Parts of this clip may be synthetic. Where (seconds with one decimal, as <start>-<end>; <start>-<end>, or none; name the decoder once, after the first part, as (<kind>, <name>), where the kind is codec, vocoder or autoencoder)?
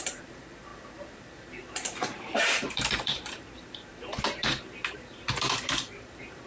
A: 0.0-6.5 (vocoder, BigVGAN v2)